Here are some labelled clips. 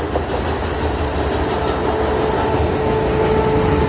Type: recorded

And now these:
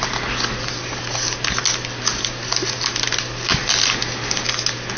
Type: recorded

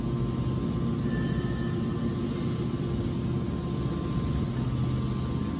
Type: recorded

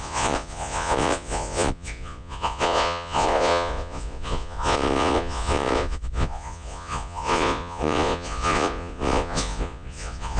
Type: remade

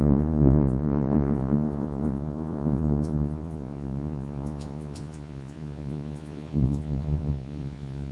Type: remade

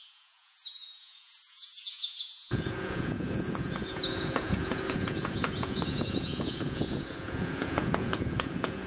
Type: remade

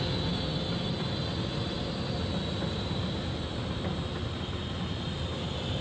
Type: recorded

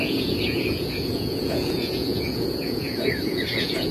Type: remade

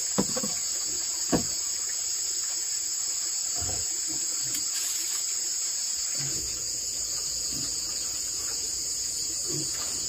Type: remade